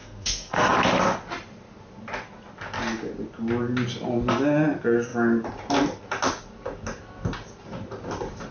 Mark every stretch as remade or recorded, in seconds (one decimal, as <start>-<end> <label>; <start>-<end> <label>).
0.0-0.7 remade; 0.7-8.5 recorded